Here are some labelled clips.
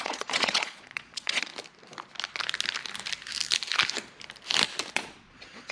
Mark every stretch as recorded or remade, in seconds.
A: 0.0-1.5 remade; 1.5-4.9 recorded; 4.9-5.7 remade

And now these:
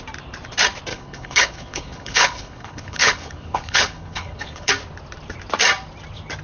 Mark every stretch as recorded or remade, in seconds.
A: 0.0-0.9 recorded; 0.9-4.7 remade; 4.7-6.4 recorded

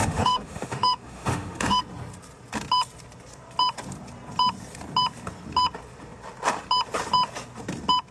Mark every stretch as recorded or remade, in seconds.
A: 0.0-1.8 remade; 1.8-8.1 recorded

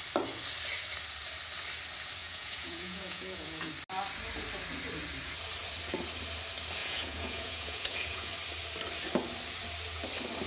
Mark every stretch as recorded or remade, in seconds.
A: 0.0-2.2 recorded; 2.2-3.7 remade; 3.7-6.8 recorded; 6.8-8.3 remade; 8.3-10.5 recorded

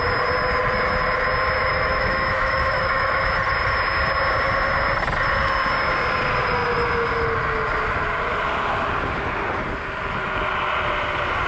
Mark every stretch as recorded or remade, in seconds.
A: 0.0-1.7 recorded; 1.7-3.3 remade; 3.3-11.5 recorded